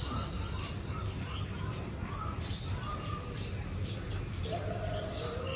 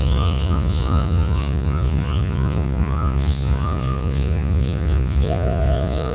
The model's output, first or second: second